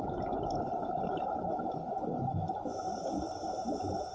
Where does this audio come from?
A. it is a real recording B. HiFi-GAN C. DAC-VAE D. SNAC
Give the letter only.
A